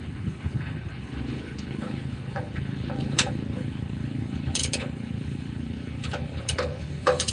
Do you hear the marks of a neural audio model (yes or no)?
yes